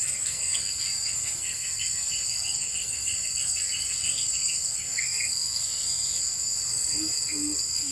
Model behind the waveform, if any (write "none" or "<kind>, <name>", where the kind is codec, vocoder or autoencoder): codec, SNAC